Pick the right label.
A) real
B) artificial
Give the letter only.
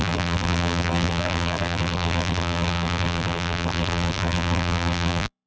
B